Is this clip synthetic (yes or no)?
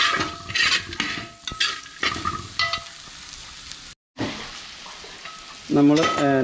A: no